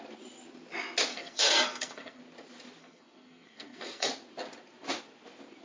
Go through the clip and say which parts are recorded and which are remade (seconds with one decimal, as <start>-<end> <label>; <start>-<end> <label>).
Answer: 0.0-1.1 recorded; 1.1-2.2 remade; 2.2-2.8 recorded; 2.8-4.1 remade; 4.1-5.6 recorded